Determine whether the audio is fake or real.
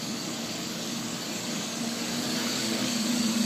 fake